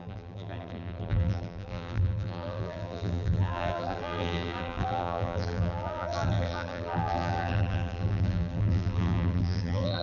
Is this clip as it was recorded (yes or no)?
no